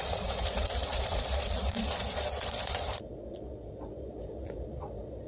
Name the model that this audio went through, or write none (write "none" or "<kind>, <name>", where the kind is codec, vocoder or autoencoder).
vocoder, Vocos